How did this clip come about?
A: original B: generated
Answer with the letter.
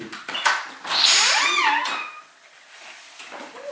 A